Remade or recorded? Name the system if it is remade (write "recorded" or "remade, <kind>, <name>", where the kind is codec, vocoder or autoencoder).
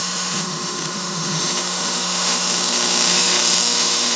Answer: remade, autoencoder, DAC-VAE